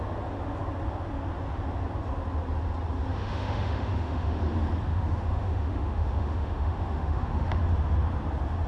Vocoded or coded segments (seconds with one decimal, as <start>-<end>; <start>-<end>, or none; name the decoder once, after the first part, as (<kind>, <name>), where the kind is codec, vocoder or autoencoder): 3.1-4.4 (autoencoder, DAC-VAE); 4.9-7.6